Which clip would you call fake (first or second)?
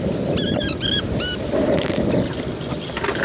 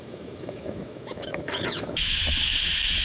second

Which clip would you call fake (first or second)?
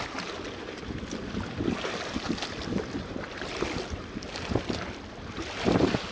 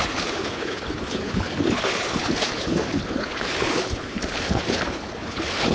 second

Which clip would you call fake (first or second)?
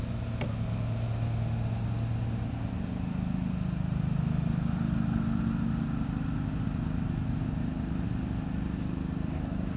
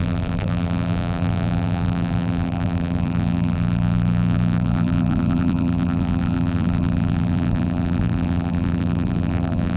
second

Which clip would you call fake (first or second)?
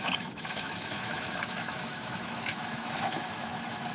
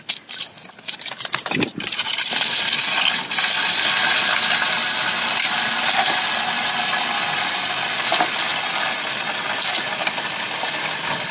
first